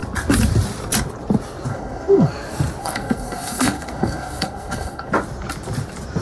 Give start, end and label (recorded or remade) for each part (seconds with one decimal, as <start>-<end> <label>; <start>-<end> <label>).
0.0-1.7 recorded; 1.7-2.3 remade; 2.3-2.8 recorded; 2.8-5.1 remade; 5.1-6.2 recorded